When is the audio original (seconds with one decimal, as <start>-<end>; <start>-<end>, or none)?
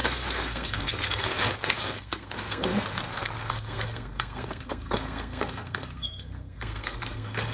none